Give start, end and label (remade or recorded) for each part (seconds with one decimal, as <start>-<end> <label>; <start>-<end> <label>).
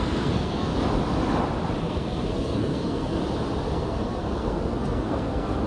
0.0-0.7 remade; 0.7-1.8 recorded; 1.8-3.2 remade; 3.2-3.7 recorded; 3.7-5.7 remade